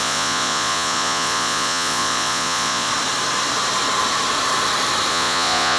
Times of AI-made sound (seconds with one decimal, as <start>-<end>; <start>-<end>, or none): 0.0-2.9; 5.1-5.8